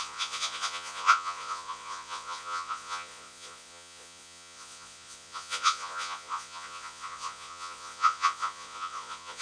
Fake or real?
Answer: fake